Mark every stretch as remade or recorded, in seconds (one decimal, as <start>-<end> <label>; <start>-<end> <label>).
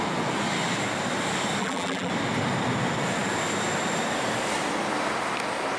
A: 0.0-1.6 recorded; 1.6-2.1 remade; 2.1-5.8 recorded